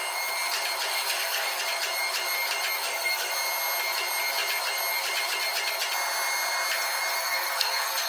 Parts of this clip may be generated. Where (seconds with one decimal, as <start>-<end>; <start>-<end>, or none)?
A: 0.9-1.6; 2.8-3.3; 7.2-8.1